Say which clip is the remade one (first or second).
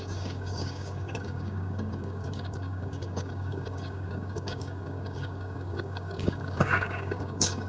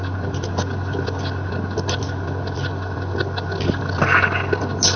first